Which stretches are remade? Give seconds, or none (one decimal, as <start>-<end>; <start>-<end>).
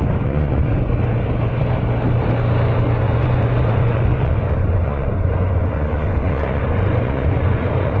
0.0-0.9; 3.0-8.0